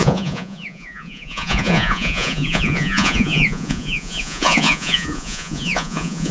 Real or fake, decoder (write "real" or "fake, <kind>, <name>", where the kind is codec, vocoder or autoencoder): fake, vocoder, Vocos